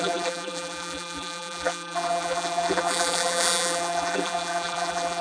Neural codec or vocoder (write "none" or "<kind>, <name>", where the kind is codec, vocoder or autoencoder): vocoder, BigVGAN v2